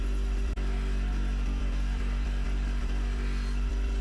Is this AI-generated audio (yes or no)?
no